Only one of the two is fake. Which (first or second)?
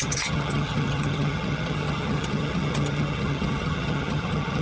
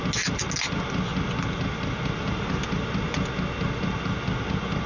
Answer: first